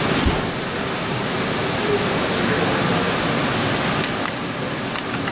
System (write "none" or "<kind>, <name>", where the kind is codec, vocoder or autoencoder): none